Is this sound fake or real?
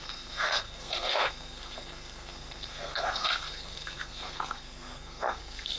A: fake